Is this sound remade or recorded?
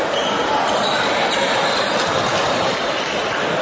recorded